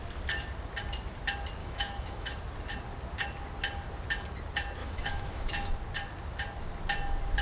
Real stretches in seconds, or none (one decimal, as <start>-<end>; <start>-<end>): 0.0-1.6; 2.4-4.8; 5.7-7.4